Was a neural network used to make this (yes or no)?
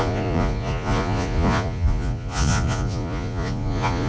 yes